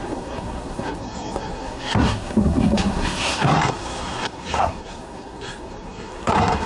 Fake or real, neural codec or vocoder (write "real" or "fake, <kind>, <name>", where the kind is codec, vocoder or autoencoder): fake, codec, SNAC